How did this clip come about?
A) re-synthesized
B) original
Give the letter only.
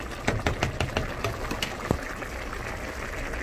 B